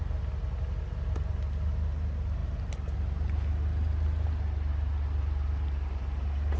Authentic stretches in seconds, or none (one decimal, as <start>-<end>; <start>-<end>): 0.0-6.6